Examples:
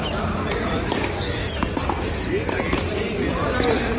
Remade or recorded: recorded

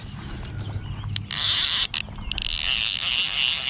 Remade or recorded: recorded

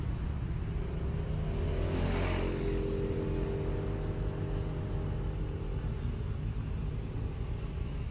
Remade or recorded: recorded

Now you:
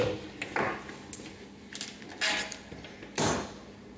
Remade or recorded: recorded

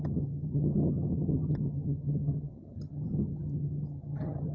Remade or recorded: remade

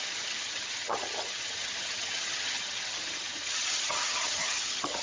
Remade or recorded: remade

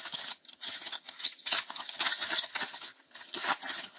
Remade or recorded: remade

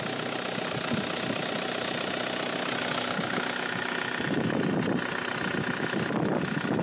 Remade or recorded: recorded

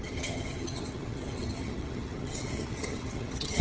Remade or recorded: remade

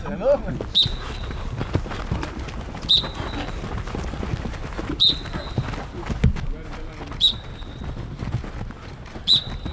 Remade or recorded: recorded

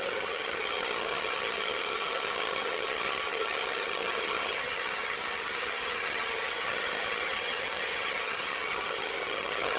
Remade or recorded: remade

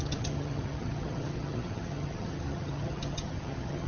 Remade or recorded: remade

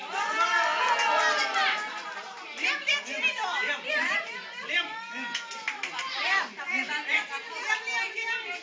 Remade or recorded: recorded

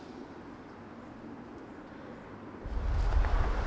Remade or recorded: recorded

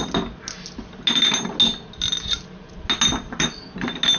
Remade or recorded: recorded